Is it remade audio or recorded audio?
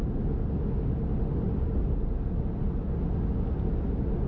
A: recorded